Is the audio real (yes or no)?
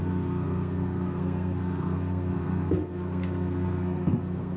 no